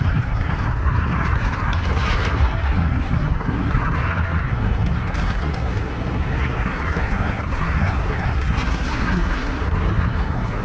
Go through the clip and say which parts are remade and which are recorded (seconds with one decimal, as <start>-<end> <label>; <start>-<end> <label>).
0.0-10.6 remade